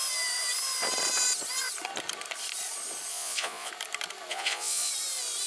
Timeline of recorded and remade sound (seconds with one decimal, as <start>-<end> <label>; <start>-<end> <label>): 0.0-3.1 recorded; 3.1-3.7 remade; 3.7-4.3 recorded; 4.3-4.9 remade; 4.9-5.5 recorded